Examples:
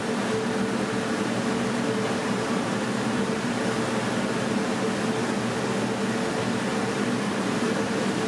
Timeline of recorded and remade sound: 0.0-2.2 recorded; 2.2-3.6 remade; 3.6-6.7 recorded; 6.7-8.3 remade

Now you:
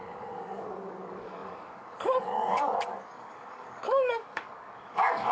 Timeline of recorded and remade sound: 0.0-5.3 remade

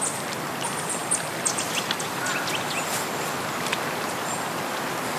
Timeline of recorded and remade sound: 0.0-5.2 recorded

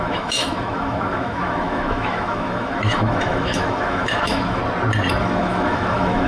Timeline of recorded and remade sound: 0.0-4.6 remade; 4.6-5.2 recorded; 5.2-6.3 remade